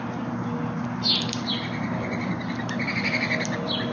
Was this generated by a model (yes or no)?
no